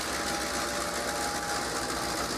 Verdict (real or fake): real